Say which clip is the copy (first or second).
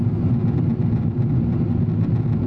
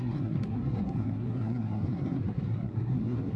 second